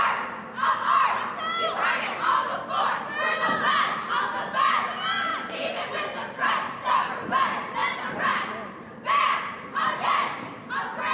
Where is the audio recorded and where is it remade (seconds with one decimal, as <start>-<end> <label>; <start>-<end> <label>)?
0.0-5.3 recorded; 5.3-5.9 remade; 5.9-7.8 recorded; 7.8-9.4 remade; 9.4-11.1 recorded